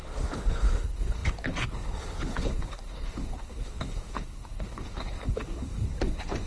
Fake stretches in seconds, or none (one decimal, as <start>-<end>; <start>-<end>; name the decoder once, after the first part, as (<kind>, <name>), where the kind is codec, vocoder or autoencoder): 0.0-6.5 (codec, HILCodec)